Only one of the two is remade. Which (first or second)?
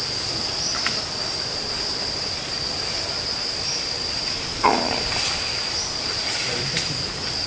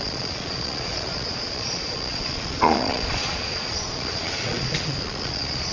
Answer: second